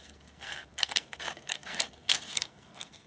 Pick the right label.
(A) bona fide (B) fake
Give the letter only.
B